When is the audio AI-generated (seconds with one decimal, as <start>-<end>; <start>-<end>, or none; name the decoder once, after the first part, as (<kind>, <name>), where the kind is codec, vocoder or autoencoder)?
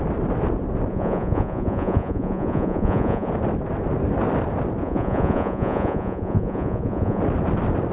0.9-3.3 (vocoder, Vocos); 4.8-7.2